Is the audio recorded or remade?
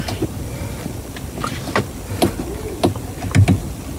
recorded